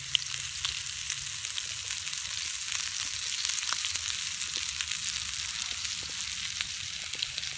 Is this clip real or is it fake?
real